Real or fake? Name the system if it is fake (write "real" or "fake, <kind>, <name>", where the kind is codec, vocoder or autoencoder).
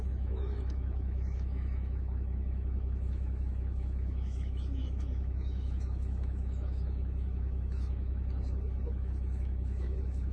fake, autoencoder, DAC-VAE